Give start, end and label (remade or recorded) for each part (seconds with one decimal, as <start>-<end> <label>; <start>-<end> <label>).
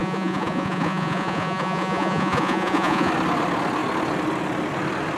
0.0-3.1 remade; 3.1-5.2 recorded